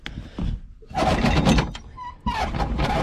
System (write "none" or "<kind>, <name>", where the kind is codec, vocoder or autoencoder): none